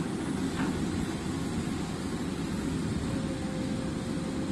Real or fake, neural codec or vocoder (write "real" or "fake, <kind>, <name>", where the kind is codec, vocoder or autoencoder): real